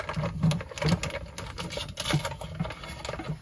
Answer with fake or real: real